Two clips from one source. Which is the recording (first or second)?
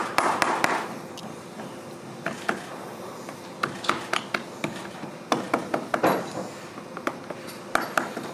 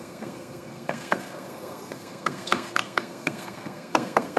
first